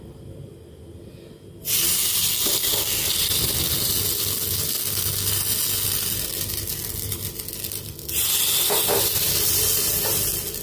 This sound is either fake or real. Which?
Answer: real